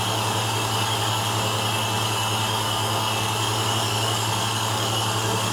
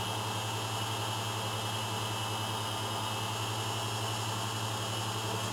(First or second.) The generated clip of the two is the first